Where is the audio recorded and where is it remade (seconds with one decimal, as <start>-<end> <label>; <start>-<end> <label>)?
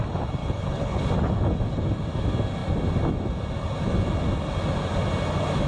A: 0.0-0.4 recorded; 0.4-1.1 remade; 1.1-5.7 recorded